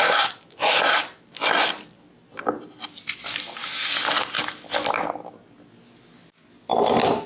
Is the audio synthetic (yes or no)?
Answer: no